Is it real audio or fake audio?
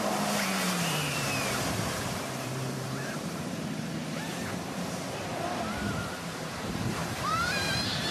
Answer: fake